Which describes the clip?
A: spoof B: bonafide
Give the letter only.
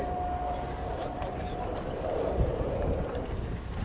A